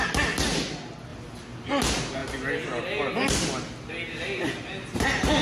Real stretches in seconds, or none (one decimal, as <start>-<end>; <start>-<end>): 0.0-1.1; 1.7-5.4